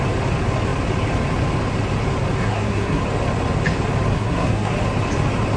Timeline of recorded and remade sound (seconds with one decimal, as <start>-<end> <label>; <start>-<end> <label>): 0.0-2.4 recorded; 2.4-3.0 remade; 3.0-4.1 recorded; 4.1-4.7 remade; 4.7-5.6 recorded

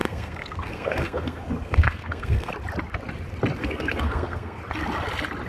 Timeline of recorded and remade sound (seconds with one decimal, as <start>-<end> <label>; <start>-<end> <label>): 0.0-2.5 remade; 2.5-3.6 recorded; 3.6-4.6 remade; 4.6-5.5 recorded

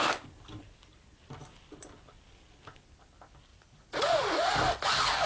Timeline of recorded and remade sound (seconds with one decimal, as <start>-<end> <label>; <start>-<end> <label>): 0.0-3.5 recorded; 3.5-4.5 remade; 4.5-5.3 recorded